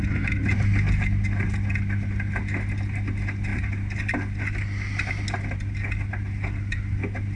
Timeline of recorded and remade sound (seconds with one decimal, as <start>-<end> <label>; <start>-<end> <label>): 0.0-7.4 recorded